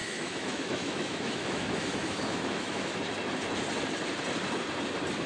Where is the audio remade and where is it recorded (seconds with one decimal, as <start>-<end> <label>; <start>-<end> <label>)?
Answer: 0.0-3.0 remade; 3.0-5.3 recorded

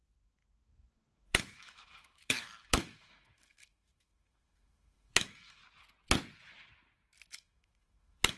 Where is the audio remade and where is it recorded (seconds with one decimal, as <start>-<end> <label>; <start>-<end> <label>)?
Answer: 0.0-5.6 remade; 5.6-7.3 recorded; 7.3-8.4 remade

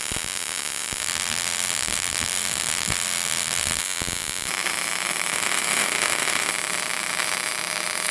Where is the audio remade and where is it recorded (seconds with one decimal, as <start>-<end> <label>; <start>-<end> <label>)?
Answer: 0.0-1.0 recorded; 1.0-3.8 remade; 3.8-5.3 recorded; 5.3-6.5 remade; 6.5-8.1 recorded

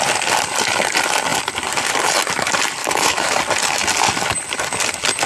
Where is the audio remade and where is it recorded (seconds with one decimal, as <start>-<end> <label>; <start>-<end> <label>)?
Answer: 0.0-2.8 recorded; 2.8-3.4 remade; 3.4-5.3 recorded

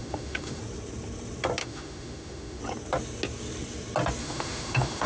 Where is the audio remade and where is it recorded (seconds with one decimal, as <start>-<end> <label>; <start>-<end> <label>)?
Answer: 0.0-0.6 remade; 0.6-1.6 recorded; 1.6-2.6 remade; 2.6-4.2 recorded; 4.2-5.1 remade